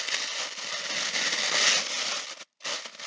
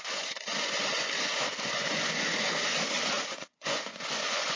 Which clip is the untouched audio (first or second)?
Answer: first